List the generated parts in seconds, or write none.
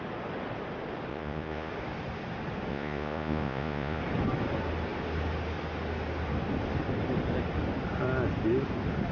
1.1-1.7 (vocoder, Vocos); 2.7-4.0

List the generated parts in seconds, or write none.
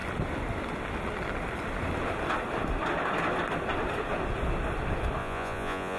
5.2-6.0 (vocoder, Vocos)